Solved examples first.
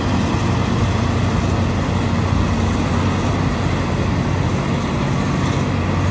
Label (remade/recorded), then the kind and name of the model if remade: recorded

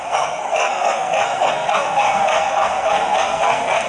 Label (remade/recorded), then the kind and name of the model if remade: remade, codec, SNAC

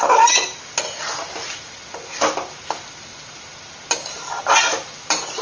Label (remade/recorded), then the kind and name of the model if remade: recorded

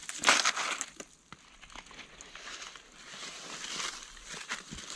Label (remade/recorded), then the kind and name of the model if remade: recorded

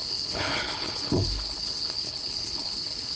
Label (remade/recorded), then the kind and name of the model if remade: remade, codec, HILCodec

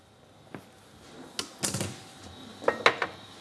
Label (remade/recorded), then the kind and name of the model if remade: recorded